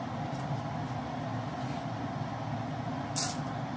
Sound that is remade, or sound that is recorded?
recorded